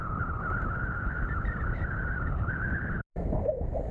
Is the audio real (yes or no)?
no